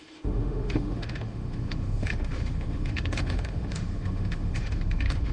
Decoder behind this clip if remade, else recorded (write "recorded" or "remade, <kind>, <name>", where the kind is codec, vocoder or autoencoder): remade, autoencoder, DAC-VAE